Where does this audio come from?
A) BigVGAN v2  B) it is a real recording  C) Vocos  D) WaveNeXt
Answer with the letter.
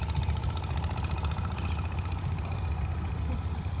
B